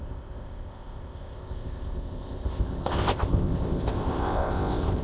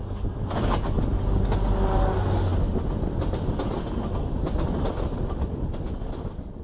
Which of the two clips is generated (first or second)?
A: first